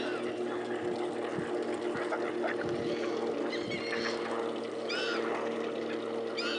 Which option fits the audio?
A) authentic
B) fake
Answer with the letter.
A